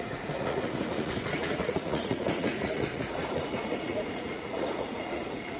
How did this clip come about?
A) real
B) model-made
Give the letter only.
B